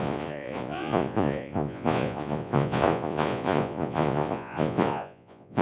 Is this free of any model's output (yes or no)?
no